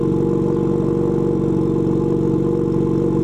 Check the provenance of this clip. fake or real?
real